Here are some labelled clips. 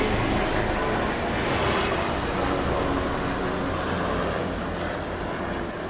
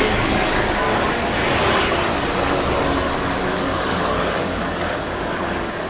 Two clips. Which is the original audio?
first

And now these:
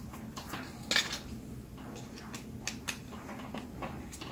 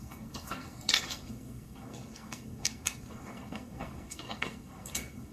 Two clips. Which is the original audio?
first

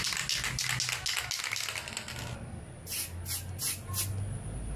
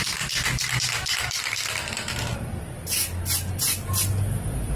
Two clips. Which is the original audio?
first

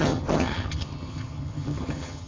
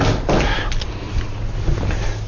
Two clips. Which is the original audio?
second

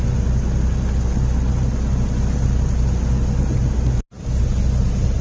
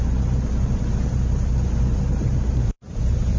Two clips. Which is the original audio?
first